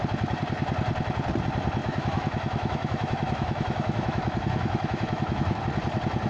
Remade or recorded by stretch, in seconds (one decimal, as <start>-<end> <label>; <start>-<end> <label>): 0.0-1.8 recorded; 1.8-5.6 remade; 5.6-6.3 recorded